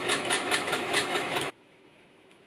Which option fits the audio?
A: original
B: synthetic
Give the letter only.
B